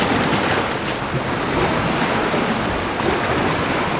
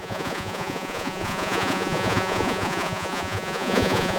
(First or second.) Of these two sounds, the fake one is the second